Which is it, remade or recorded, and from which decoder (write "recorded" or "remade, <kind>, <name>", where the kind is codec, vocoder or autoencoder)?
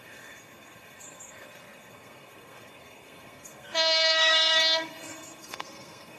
remade, codec, SNAC